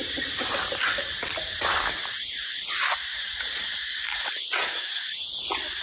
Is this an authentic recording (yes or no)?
yes